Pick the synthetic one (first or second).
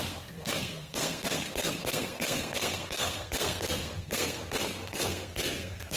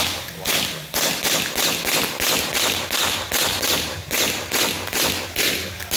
first